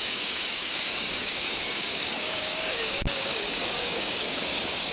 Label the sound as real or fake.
fake